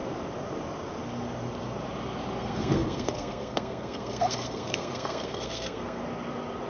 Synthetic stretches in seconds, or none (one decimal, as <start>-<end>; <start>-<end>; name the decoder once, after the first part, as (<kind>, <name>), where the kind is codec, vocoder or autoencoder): 2.4-6.0 (codec, SNAC)

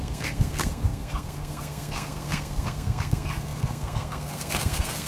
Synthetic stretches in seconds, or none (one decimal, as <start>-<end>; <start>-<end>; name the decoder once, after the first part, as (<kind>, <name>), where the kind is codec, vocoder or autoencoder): 0.0-5.1 (codec, SNAC)

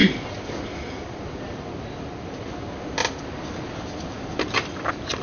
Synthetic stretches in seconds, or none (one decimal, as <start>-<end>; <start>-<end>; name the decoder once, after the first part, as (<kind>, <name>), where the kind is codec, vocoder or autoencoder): none